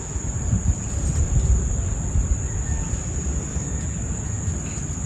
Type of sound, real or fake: real